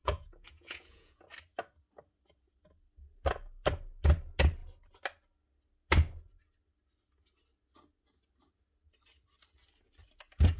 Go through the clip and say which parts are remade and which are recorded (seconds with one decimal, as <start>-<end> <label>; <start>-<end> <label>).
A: 0.0-1.2 remade; 1.2-10.6 recorded